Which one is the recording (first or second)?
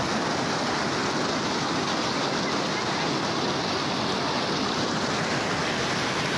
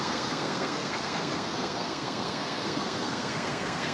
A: first